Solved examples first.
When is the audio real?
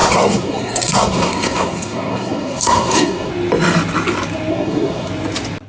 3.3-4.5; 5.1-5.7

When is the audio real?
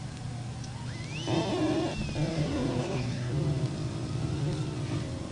0.0-2.3; 3.3-5.3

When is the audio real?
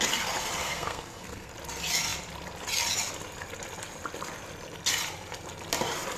0.0-0.6; 1.5-6.2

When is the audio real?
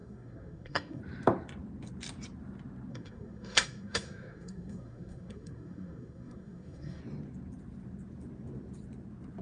1.0-2.9; 7.0-9.4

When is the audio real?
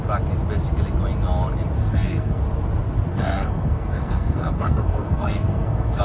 0.0-1.8; 2.4-3.1